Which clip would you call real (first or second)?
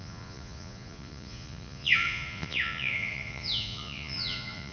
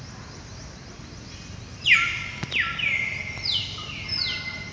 second